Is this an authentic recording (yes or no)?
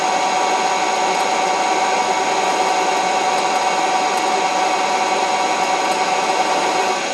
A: yes